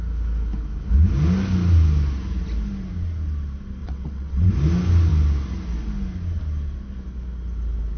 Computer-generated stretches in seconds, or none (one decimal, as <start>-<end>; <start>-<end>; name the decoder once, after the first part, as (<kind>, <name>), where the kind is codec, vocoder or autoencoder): 3.8-4.5 (vocoder, WaveNeXt)